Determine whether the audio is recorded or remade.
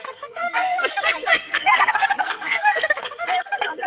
remade